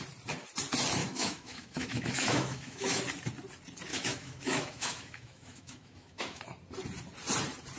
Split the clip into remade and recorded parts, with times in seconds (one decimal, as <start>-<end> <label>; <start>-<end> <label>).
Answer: 0.0-1.0 recorded; 1.0-3.0 remade; 3.0-3.9 recorded; 3.9-6.4 remade; 6.4-7.8 recorded